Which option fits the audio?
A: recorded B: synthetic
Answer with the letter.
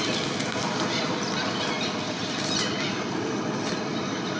A